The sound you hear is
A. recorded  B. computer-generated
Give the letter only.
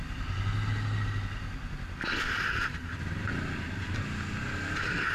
A